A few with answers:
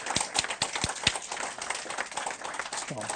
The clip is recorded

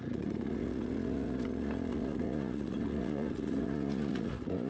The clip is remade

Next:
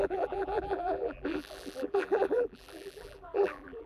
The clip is remade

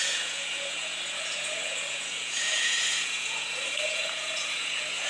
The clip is remade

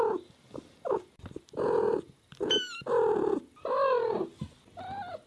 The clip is recorded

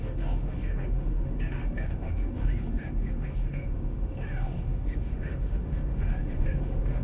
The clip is remade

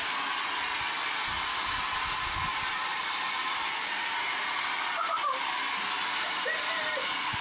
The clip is remade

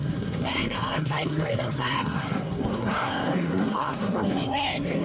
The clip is remade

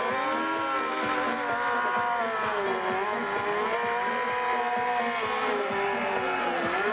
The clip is recorded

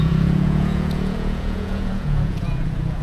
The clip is remade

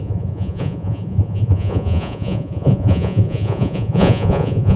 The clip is remade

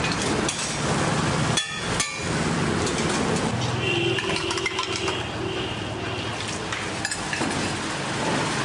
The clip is recorded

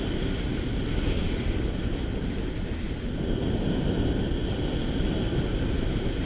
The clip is recorded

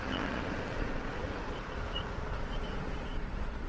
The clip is remade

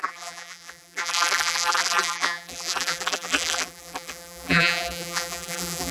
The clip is remade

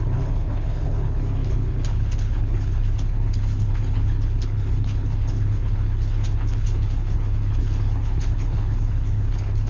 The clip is remade